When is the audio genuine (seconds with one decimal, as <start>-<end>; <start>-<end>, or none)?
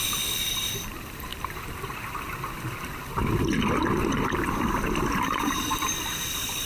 2.9-5.4